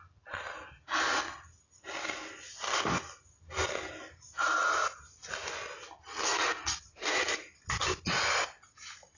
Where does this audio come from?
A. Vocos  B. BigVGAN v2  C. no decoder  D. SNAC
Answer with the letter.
C